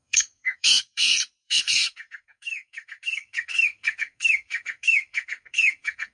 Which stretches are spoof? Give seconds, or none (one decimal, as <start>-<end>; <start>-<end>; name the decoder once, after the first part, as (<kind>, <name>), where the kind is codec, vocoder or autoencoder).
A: 0.0-6.1 (codec, SNAC)